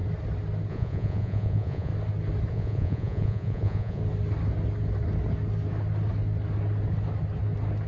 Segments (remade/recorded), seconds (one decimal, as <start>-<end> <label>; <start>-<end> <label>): 0.0-0.7 recorded; 0.7-1.9 remade; 1.9-2.5 recorded; 2.5-4.0 remade; 4.0-7.9 recorded